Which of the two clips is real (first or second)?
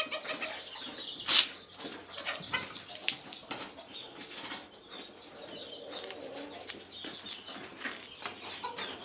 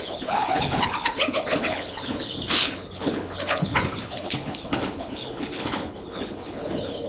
first